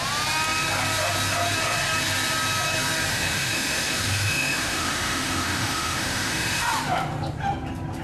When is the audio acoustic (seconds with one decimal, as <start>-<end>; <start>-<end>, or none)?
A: 0.0-3.1; 6.6-8.0